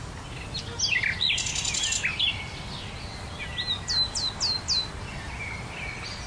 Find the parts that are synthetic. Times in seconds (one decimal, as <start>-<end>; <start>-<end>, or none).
none